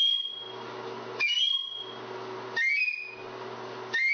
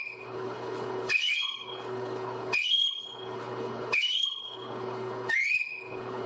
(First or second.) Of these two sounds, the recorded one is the first